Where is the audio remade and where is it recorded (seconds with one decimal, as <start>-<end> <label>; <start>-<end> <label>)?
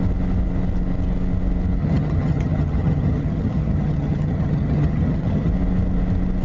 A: 0.0-1.8 recorded; 1.8-5.5 remade; 5.5-6.4 recorded